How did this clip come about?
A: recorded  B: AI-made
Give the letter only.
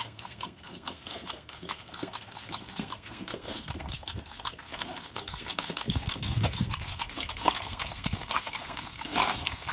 B